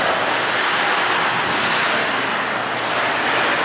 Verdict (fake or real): real